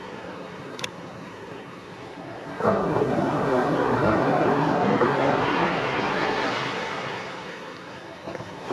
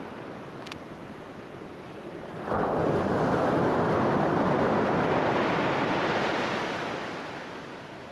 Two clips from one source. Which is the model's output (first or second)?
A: first